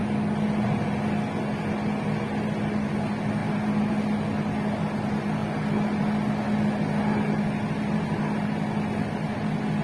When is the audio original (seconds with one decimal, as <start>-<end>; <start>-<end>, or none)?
0.0-9.8